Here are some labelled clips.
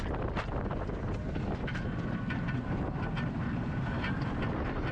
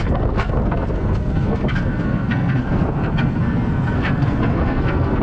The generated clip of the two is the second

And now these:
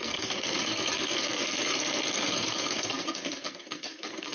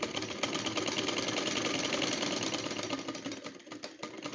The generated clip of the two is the first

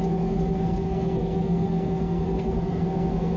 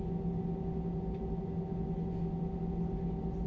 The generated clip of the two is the first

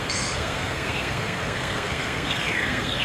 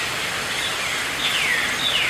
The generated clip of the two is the first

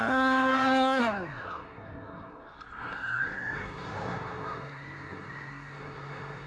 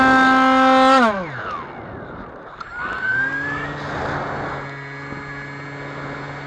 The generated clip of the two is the first